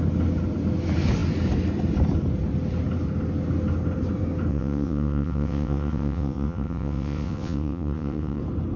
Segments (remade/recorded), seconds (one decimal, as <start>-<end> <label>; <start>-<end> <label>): 0.0-4.5 recorded; 4.5-8.4 remade; 8.4-8.8 recorded